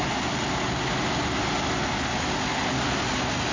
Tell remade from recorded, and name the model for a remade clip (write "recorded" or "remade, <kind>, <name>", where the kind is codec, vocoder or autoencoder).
recorded